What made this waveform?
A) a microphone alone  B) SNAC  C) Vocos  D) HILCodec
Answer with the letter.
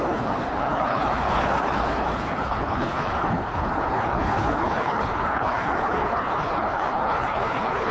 D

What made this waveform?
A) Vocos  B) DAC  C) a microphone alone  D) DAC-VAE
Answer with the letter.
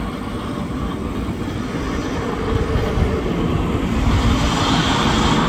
C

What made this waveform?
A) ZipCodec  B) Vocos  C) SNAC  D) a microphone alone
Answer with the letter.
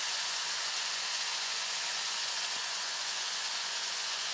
B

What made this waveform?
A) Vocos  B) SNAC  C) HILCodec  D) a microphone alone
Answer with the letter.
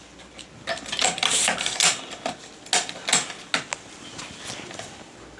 D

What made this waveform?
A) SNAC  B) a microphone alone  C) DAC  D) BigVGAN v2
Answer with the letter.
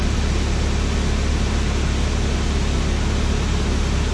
B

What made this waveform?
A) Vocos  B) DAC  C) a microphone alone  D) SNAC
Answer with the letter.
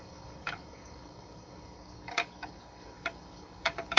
B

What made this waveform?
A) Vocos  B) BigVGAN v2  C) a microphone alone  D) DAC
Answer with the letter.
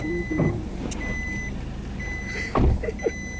C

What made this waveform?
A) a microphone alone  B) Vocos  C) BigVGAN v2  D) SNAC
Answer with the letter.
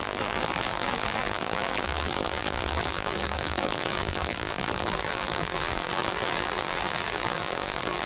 C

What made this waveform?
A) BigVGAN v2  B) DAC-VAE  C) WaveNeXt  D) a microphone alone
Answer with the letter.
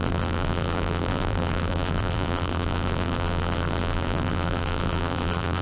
A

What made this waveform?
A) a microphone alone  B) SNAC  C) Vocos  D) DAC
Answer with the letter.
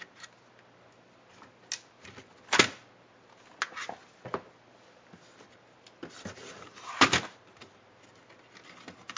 A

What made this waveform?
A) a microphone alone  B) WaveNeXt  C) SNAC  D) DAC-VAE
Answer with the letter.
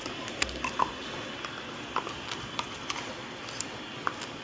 A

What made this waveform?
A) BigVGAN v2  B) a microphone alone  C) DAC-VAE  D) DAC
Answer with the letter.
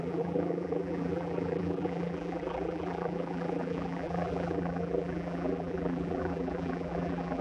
A